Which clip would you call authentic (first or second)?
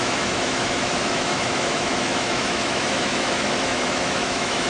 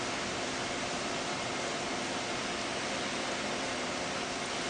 second